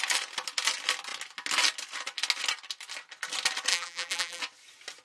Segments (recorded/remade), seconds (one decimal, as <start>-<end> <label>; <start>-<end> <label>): 0.0-3.7 recorded; 3.7-4.4 remade; 4.4-5.0 recorded